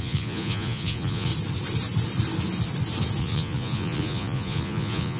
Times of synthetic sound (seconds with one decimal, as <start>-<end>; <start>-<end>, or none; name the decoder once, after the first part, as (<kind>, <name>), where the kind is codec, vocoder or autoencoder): 0.0-1.3 (vocoder, Vocos); 3.2-5.2